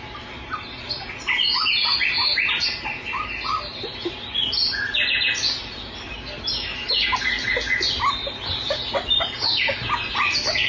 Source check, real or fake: real